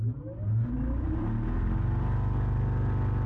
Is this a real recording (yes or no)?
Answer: yes